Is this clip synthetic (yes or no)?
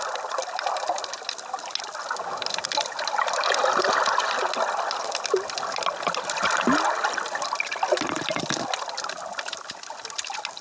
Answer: no